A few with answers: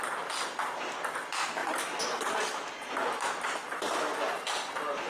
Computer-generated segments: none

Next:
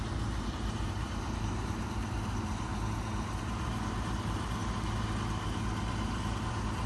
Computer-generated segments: 0.0-2.7 (vocoder, BigVGAN v2); 3.4-4.6; 6.5-6.9

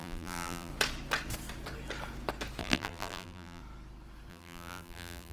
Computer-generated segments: 0.0-0.7 (vocoder, BigVGAN v2); 2.6-3.6; 4.3-5.3

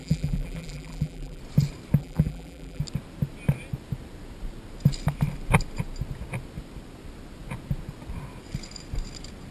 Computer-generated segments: 0.0-1.4 (vocoder, BigVGAN v2); 2.0-2.8

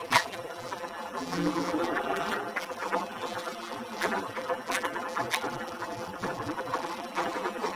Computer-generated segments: 0.0-7.8 (vocoder, BigVGAN v2)

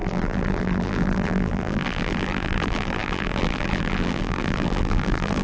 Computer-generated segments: 0.0-5.4 (vocoder, BigVGAN v2)